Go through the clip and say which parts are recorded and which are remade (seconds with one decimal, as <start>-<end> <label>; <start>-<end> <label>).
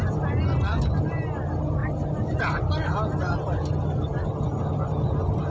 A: 0.0-5.5 recorded